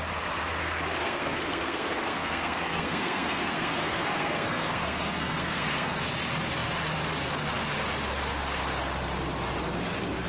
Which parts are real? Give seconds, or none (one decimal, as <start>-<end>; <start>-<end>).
0.0-1.0; 6.0-10.3